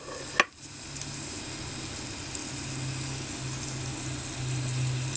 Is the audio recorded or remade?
recorded